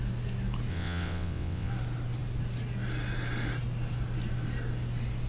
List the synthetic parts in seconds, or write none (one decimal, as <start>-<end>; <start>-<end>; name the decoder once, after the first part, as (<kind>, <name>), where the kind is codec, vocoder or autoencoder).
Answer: 0.7-1.7 (vocoder, WaveNeXt)